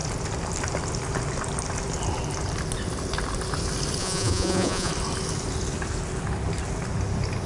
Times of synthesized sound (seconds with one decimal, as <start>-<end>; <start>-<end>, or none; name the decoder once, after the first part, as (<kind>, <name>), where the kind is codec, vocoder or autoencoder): 4.0-4.9 (vocoder, Vocos)